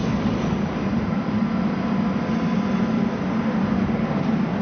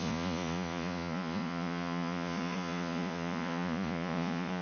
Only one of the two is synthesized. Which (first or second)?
second